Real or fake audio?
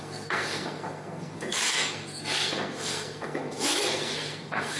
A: fake